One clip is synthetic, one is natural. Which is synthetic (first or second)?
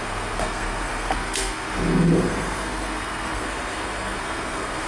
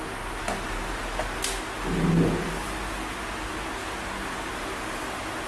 first